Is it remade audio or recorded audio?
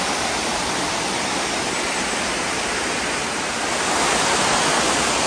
recorded